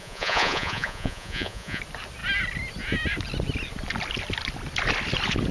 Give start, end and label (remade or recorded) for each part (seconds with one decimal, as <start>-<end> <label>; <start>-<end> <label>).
0.0-1.8 remade; 1.8-5.5 recorded